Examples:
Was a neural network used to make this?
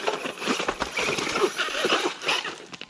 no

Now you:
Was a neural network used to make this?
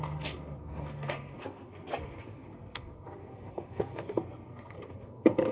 yes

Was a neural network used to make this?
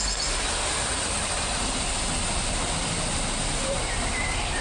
no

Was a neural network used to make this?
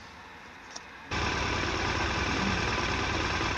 no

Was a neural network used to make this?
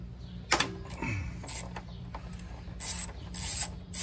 no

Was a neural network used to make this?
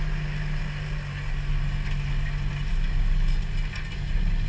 no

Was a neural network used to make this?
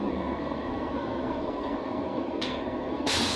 yes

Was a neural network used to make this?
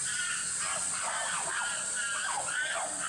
no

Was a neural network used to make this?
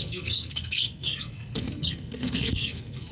yes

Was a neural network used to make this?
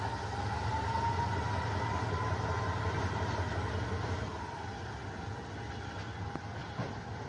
no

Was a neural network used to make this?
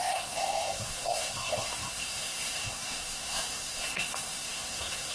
yes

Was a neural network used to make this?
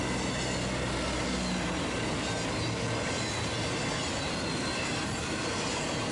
no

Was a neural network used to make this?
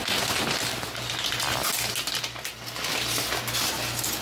no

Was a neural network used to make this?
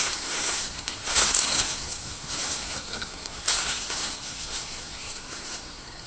yes